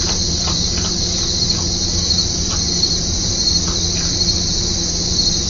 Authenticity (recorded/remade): remade